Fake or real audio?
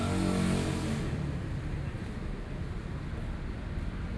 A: real